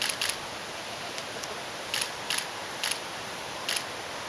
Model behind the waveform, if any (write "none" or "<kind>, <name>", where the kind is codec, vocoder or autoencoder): none